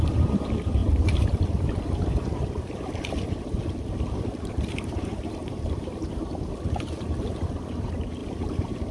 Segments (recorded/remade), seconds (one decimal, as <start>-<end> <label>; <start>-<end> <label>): 0.0-0.8 remade; 0.8-1.8 recorded; 1.8-6.3 remade; 6.3-7.7 recorded; 7.7-8.9 remade